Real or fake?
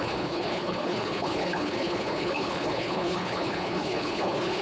fake